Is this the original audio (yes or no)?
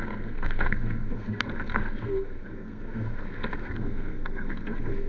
no